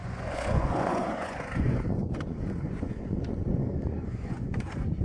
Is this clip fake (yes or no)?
yes